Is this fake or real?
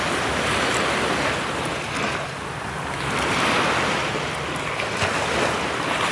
real